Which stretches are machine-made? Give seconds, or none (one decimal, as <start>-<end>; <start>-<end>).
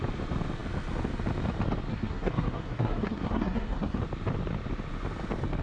1.9-4.0